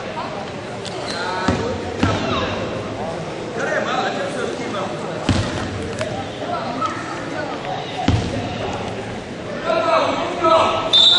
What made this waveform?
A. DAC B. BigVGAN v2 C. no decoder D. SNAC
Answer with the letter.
C